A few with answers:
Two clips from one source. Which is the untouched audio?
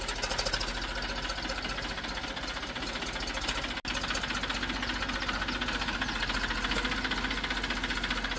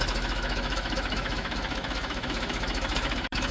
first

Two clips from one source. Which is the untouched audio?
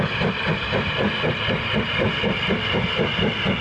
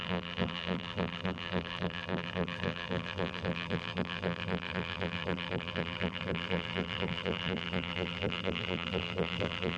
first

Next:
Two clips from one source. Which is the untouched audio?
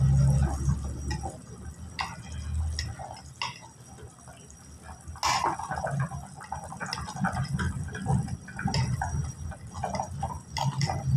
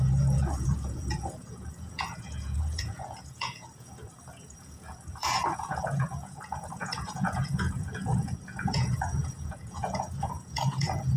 first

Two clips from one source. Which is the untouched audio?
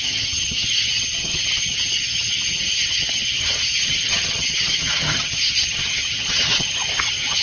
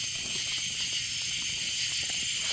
second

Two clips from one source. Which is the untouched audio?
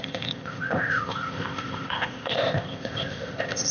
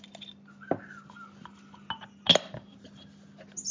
second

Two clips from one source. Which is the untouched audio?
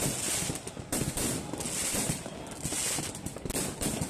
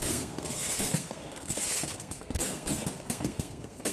first